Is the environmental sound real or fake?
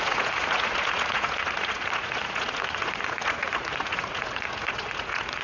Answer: fake